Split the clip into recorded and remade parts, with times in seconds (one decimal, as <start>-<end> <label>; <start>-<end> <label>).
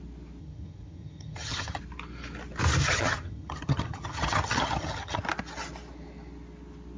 0.0-0.4 recorded; 0.4-1.8 remade; 1.8-2.8 recorded; 2.8-5.2 remade; 5.2-7.0 recorded